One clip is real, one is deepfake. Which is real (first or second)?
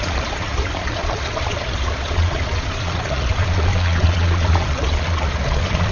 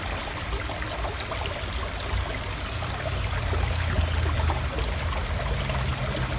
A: second